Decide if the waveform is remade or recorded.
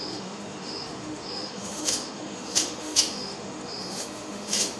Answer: remade